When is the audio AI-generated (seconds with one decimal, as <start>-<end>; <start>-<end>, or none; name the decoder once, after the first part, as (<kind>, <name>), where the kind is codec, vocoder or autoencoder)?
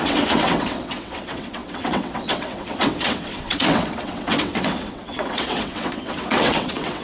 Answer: 0.0-7.0 (vocoder, WaveNeXt)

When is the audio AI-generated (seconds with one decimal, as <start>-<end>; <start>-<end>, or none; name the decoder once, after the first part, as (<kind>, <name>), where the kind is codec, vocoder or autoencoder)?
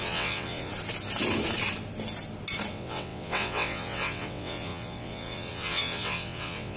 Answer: 0.0-0.7 (vocoder, WaveNeXt); 2.7-6.8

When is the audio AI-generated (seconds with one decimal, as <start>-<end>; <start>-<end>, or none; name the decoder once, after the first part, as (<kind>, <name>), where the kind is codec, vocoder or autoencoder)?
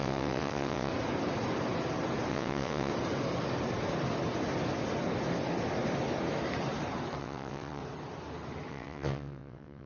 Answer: 0.0-0.9 (vocoder, WaveNeXt); 2.3-2.9; 7.2-7.8; 8.7-9.9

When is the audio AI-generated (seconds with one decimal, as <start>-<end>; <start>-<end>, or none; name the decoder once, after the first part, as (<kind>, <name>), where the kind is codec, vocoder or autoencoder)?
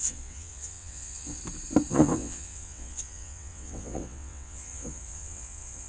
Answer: 0.0-1.4 (vocoder, WaveNeXt); 1.9-5.9